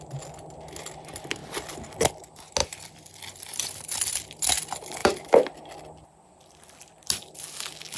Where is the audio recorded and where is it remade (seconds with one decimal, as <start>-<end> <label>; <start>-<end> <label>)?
0.0-1.4 recorded; 1.4-2.1 remade; 2.1-2.6 recorded; 2.6-4.2 remade; 4.2-5.0 recorded; 5.0-6.9 remade; 6.9-8.0 recorded